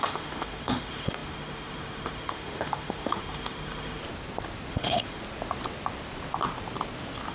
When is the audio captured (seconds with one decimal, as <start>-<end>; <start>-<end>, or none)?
4.0-4.7; 5.2-7.3